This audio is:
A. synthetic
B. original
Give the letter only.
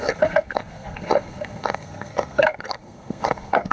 A